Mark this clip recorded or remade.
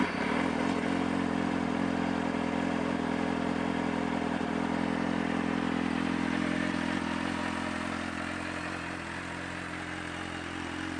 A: recorded